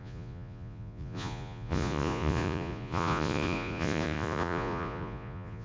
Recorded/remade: remade